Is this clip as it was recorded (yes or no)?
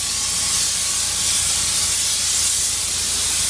yes